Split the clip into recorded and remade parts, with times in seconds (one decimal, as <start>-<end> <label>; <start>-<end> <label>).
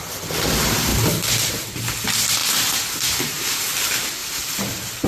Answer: 0.0-4.2 recorded; 4.2-5.1 remade